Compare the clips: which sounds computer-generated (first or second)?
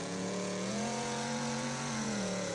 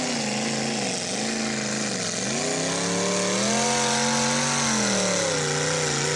first